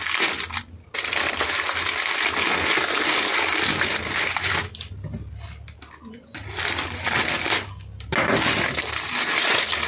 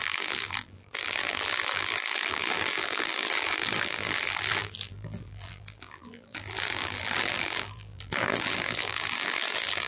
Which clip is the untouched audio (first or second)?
first